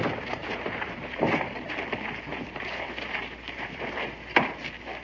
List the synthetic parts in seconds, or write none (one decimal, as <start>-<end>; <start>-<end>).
0.4-1.5; 2.3-3.8